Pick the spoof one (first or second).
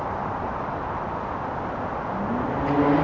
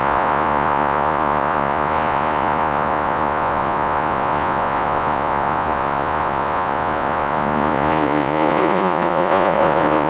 second